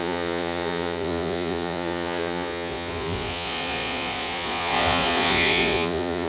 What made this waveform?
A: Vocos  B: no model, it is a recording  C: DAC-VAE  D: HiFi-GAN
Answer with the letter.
A